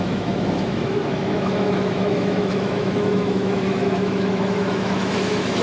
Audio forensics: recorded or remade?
remade